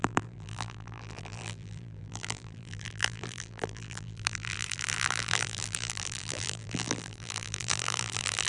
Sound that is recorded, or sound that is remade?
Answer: remade